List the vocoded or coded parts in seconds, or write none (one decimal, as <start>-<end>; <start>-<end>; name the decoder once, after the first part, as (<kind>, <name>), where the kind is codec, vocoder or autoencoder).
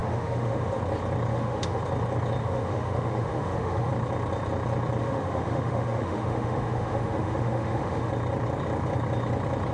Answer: 0.0-0.8 (autoencoder, DAC-VAE); 1.3-1.8; 2.4-3.9; 5.0-8.1